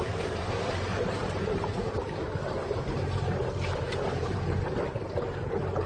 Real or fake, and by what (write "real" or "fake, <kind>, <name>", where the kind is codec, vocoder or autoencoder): fake, vocoder, BigVGAN v2